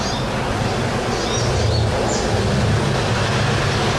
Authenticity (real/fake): real